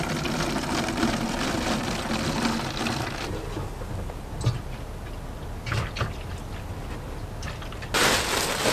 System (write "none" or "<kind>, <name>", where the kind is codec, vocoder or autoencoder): none